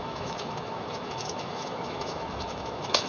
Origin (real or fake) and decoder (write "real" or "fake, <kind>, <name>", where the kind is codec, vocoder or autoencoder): fake, autoencoder, DAC-VAE